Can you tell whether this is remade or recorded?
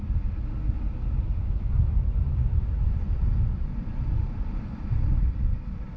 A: recorded